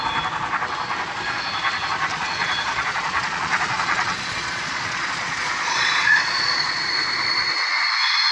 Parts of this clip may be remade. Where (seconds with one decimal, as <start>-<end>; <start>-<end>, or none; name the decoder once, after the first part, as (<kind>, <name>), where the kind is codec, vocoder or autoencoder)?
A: 2.1-6.8 (vocoder, Vocos)